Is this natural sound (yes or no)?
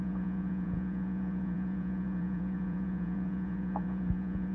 no